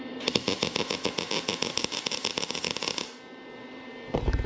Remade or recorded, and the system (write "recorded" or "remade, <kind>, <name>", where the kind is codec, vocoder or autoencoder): recorded